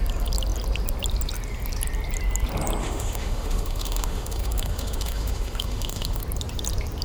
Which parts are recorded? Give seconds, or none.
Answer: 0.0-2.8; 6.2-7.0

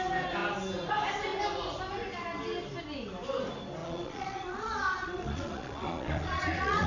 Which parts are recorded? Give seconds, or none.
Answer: 0.0-3.8